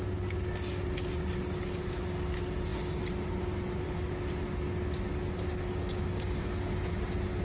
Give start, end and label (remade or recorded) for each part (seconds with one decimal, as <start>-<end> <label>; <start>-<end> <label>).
0.0-7.4 recorded

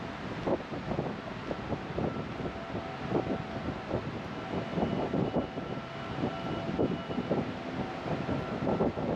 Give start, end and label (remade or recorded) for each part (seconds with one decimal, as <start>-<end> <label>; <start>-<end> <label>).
0.0-9.2 recorded

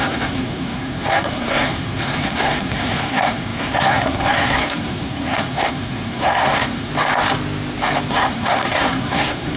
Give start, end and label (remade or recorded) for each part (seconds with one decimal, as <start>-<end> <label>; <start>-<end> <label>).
0.0-6.9 remade; 6.9-8.1 recorded; 8.1-9.6 remade

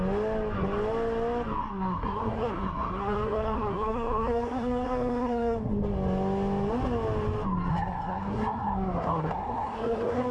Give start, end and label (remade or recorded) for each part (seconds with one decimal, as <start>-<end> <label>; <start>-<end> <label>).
0.0-1.6 recorded; 1.6-5.7 remade; 5.7-7.7 recorded; 7.7-10.3 remade